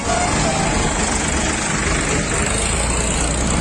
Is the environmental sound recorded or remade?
recorded